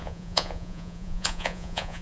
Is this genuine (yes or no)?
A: no